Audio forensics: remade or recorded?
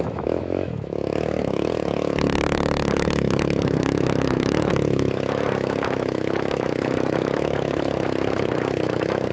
remade